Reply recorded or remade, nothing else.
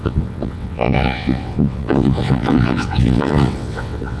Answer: remade